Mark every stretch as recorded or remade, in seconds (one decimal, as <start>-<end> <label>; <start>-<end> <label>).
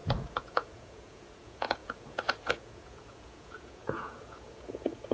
0.0-5.1 remade